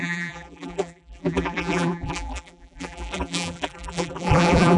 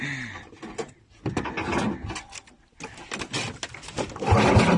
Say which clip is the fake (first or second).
first